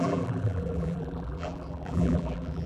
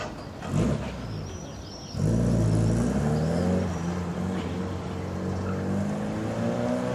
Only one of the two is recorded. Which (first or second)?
second